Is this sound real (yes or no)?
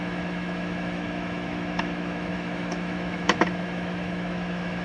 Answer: no